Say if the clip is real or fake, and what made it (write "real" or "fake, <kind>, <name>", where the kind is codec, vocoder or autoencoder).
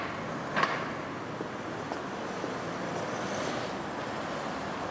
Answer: real